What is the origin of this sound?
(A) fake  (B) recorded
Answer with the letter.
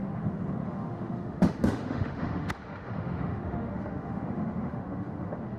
A